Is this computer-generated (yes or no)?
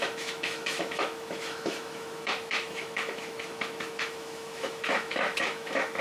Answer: yes